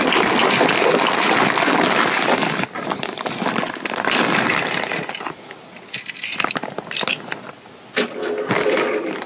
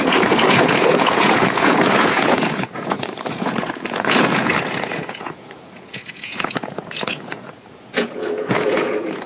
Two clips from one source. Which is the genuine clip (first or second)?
first